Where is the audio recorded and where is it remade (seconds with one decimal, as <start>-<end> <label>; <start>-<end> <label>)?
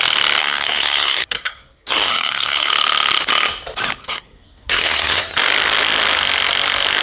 0.0-0.4 recorded; 0.4-2.7 remade; 2.7-4.0 recorded; 4.0-5.3 remade; 5.3-7.0 recorded